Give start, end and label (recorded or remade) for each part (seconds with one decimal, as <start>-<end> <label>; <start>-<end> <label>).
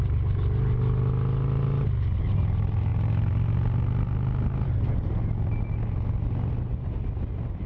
0.0-7.7 recorded